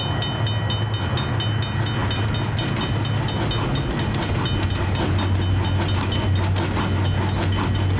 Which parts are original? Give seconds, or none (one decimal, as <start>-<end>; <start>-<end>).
0.0-8.0